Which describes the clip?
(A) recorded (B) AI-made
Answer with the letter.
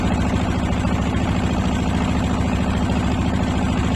A